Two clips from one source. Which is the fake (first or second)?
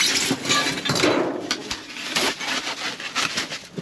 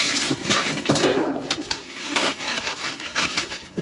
second